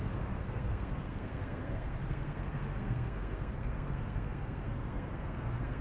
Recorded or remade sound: remade